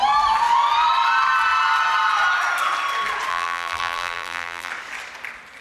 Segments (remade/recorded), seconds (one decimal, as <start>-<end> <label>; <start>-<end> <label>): 0.0-3.3 recorded; 3.3-4.7 remade; 4.7-5.6 recorded